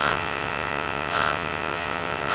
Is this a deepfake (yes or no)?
yes